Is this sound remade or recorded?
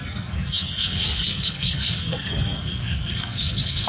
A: remade